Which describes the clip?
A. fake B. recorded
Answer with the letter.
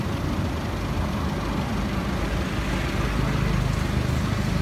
B